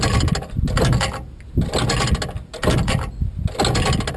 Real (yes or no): yes